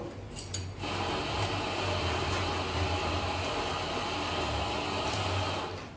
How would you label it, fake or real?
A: real